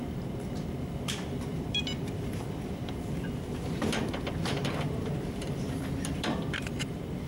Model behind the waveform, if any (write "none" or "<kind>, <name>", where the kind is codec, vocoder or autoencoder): vocoder, BigVGAN v2